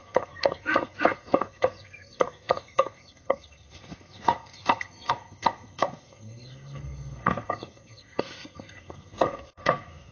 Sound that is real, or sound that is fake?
fake